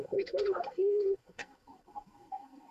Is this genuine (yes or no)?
no